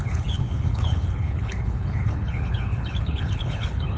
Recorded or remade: remade